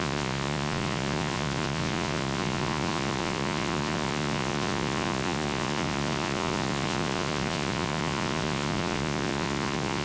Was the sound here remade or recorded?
remade